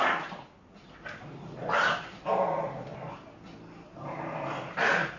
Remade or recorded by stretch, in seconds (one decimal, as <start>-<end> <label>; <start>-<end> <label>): 0.0-5.2 recorded